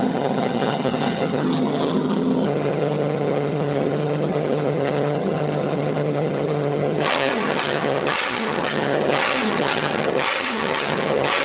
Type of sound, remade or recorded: remade